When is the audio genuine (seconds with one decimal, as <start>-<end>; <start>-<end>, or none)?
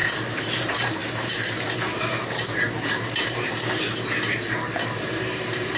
0.0-0.6